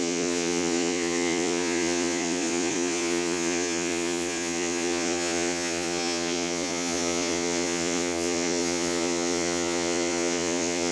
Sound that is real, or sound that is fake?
fake